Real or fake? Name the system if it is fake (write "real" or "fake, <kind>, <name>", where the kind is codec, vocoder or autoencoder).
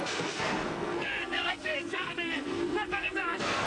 fake, codec, SNAC